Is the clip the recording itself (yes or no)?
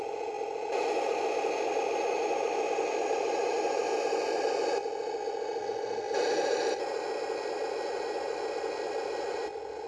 yes